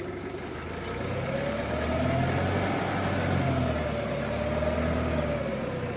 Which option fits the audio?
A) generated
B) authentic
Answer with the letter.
B